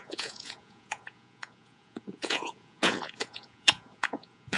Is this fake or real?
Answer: fake